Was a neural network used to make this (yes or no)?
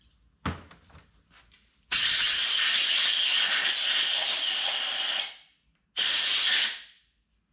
no